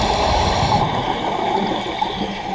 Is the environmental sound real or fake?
real